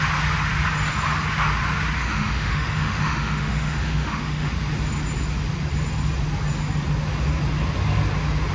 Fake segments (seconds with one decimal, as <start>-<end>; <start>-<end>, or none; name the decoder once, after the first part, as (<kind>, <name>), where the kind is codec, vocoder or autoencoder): 2.0-4.5 (autoencoder, DAC-VAE)